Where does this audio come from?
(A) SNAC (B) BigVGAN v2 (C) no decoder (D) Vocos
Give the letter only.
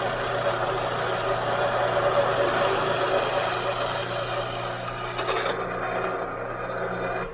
C